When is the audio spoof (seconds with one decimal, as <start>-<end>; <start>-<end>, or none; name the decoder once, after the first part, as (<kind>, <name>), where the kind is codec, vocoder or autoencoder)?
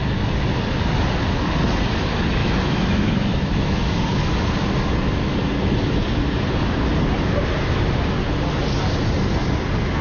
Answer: 2.4-4.0 (autoencoder, DAC-VAE)